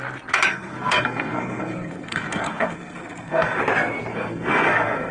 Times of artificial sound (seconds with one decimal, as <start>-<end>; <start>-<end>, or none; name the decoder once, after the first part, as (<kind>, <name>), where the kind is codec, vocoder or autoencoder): 0.5-3.6 (codec, SNAC); 4.1-5.1